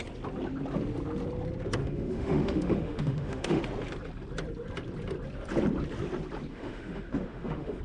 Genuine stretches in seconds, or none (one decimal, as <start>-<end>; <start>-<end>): 0.0-1.8; 3.6-6.5